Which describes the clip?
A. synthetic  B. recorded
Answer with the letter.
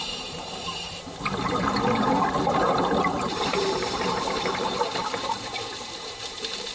A